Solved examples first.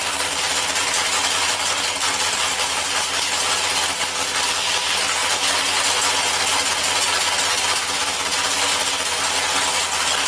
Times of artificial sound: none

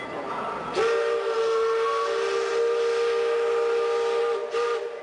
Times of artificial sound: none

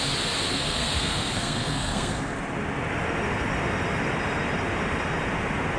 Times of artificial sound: 0.5-2.3 (codec, SNAC)